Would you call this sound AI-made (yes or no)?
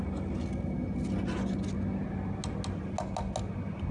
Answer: no